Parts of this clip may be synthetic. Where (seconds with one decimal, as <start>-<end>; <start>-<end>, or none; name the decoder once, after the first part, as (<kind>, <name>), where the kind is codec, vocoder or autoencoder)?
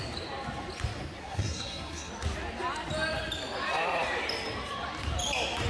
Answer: 1.2-2.1 (codec, SNAC)